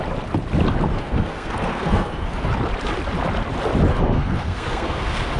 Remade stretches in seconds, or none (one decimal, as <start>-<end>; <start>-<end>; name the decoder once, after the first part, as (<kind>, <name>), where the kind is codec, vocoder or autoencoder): 0.9-2.5 (codec, SNAC); 3.9-5.4